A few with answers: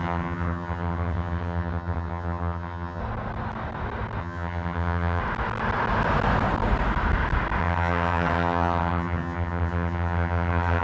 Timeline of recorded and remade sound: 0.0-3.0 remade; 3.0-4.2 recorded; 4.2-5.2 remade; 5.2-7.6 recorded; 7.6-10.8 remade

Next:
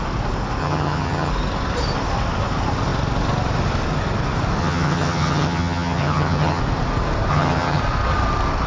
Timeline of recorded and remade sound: 0.0-0.6 recorded; 0.6-1.3 remade; 1.3-4.6 recorded; 4.6-6.6 remade; 6.6-7.3 recorded; 7.3-7.8 remade; 7.8-8.7 recorded

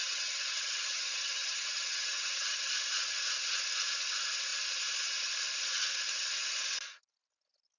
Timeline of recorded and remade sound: 0.0-2.7 remade; 2.7-7.8 recorded

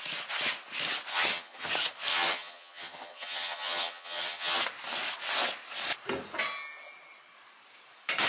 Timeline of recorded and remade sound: 0.0-1.1 recorded; 1.1-1.7 remade; 1.7-2.1 recorded; 2.1-4.6 remade; 4.6-8.3 recorded

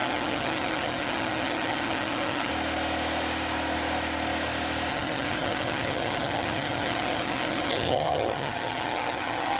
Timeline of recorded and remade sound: 0.0-2.5 remade; 2.5-4.9 recorded; 4.9-9.6 remade

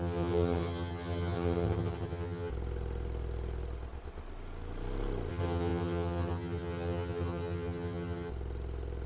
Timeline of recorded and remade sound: 0.0-2.5 remade; 2.5-5.3 recorded; 5.3-8.3 remade; 8.3-9.1 recorded